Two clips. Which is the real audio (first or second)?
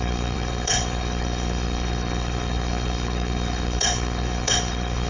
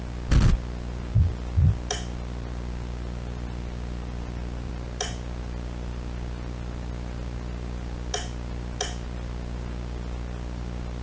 second